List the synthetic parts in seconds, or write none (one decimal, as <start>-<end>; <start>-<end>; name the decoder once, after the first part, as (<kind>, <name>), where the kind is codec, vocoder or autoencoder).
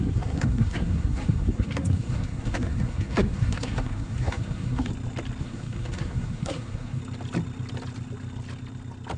0.0-4.9 (codec, SNAC); 5.4-7.0